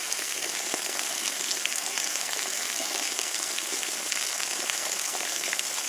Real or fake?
fake